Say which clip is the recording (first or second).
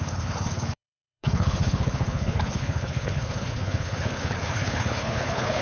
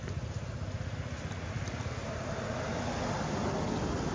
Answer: second